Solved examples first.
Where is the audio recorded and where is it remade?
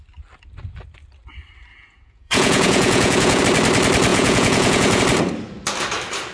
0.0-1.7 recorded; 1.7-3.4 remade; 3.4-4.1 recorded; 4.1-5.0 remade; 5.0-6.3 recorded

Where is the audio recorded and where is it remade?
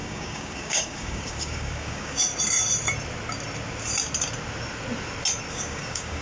0.0-2.3 remade; 2.3-5.5 recorded; 5.5-6.2 remade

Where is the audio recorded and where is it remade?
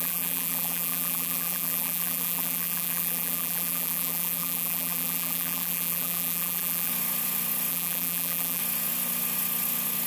0.0-6.9 remade; 6.9-7.7 recorded; 7.7-8.6 remade; 8.6-10.1 recorded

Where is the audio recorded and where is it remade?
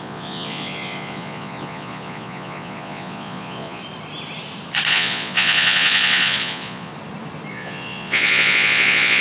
0.0-3.8 remade; 3.8-4.9 recorded; 4.9-6.9 remade; 6.9-7.5 recorded; 7.5-9.2 remade